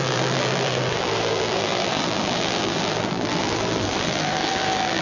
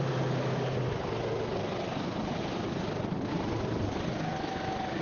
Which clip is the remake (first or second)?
first